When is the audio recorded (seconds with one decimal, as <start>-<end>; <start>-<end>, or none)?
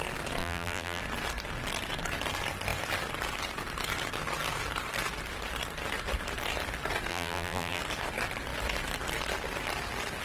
0.0-0.4; 1.0-7.1; 7.8-10.2